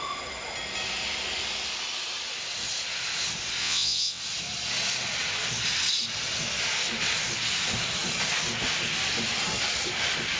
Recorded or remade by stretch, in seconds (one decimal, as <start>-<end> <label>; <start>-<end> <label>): 0.0-3.6 recorded; 3.6-4.2 remade; 4.2-10.4 recorded